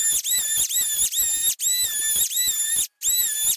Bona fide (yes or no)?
yes